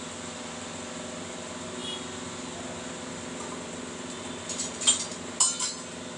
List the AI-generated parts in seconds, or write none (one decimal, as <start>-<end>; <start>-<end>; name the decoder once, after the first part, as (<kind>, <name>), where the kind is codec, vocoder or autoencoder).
none